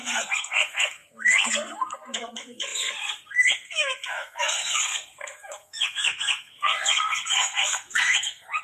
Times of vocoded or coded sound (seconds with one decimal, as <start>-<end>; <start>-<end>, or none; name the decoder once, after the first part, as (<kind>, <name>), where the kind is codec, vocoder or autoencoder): 0.0-8.6 (codec, SNAC)